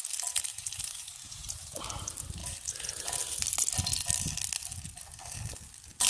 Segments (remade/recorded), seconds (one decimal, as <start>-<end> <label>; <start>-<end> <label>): 0.0-0.5 recorded; 0.5-1.8 remade; 1.8-6.1 recorded

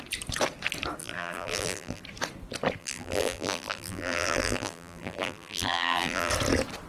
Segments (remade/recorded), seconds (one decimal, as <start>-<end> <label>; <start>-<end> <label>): 0.0-1.0 recorded; 1.0-2.0 remade; 2.0-2.8 recorded; 2.8-6.3 remade; 6.3-6.9 recorded

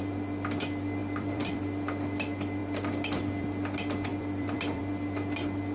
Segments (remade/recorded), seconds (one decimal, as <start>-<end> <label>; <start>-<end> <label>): 0.0-1.0 recorded; 1.0-1.6 remade; 1.6-4.1 recorded; 4.1-4.8 remade; 4.8-5.7 recorded

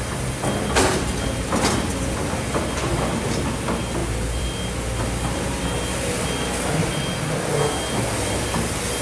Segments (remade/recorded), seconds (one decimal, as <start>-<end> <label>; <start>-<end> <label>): 0.0-4.0 recorded; 4.0-4.6 remade; 4.6-9.0 recorded

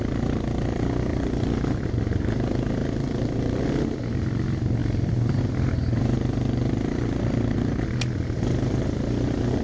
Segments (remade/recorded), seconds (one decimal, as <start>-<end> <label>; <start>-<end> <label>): 0.0-1.1 recorded; 1.1-1.7 remade; 1.7-4.8 recorded; 4.8-5.4 remade; 5.4-9.6 recorded

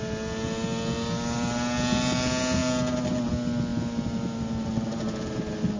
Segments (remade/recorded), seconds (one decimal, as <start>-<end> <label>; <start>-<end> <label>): 0.0-5.8 recorded

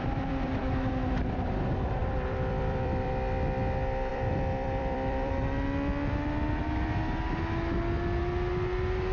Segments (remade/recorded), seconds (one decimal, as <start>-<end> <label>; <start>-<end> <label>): 0.0-0.9 remade; 0.9-2.0 recorded; 2.0-3.1 remade; 3.1-4.1 recorded; 4.1-5.3 remade; 5.3-9.1 recorded